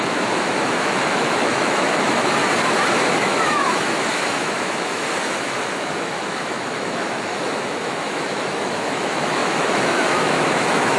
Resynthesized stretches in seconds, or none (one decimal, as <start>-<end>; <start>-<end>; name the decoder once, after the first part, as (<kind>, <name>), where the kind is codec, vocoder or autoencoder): 0.0-2.4 (autoencoder, DAC-VAE); 3.2-11.0